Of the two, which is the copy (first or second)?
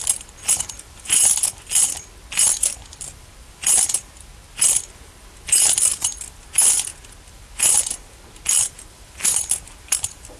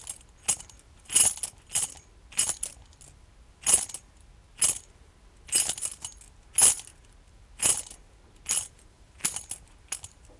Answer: first